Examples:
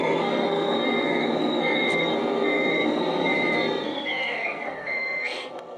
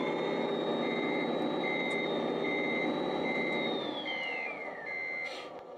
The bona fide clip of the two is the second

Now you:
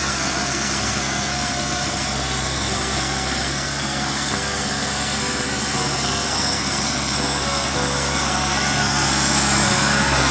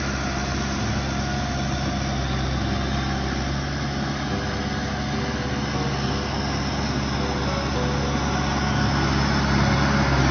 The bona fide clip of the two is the second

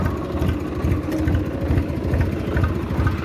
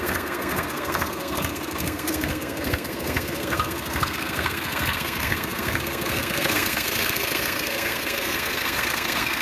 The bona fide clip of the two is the first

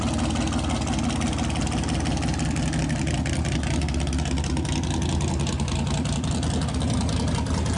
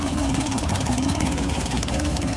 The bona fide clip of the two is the first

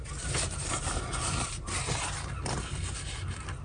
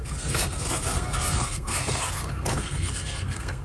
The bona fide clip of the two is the first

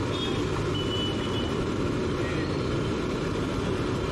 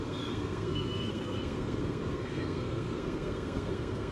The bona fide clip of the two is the first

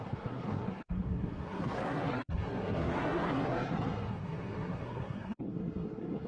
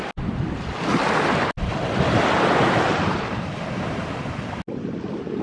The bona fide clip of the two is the second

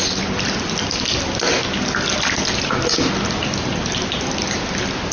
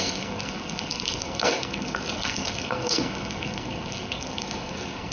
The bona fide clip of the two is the first